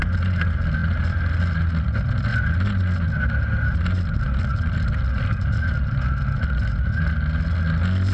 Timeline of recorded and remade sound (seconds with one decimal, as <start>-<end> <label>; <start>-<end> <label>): 0.0-8.1 recorded